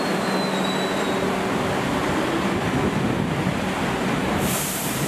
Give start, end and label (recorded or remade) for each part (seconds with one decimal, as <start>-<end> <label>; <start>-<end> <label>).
0.0-4.2 recorded; 4.2-5.1 remade